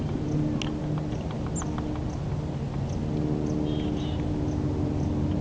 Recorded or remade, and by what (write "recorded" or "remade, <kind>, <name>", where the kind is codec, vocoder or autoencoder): recorded